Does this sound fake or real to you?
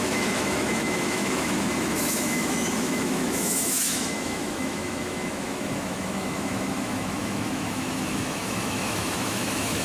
fake